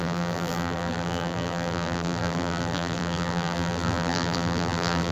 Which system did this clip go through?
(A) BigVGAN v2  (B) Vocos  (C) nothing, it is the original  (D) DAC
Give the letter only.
A